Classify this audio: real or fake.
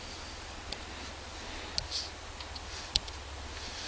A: real